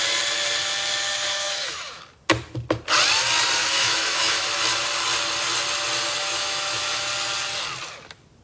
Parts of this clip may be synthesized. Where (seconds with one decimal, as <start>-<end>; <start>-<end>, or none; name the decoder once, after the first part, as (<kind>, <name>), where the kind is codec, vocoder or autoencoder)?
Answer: 1.1-2.0 (autoencoder, DAC-VAE); 3.6-4.5; 6.2-7.1